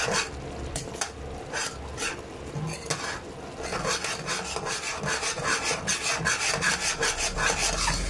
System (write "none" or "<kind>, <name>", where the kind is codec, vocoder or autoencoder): none